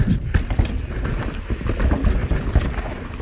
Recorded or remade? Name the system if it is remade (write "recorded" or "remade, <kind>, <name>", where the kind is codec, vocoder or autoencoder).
recorded